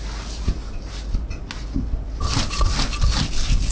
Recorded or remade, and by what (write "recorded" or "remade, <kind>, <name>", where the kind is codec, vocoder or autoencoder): recorded